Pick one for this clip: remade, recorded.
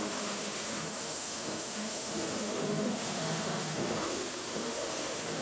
remade